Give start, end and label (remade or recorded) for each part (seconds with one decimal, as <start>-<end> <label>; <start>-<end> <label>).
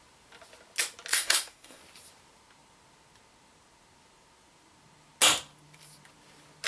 0.0-1.1 recorded; 1.1-1.8 remade; 1.8-6.7 recorded